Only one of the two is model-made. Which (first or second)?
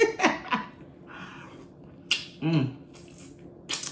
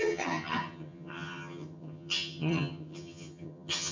second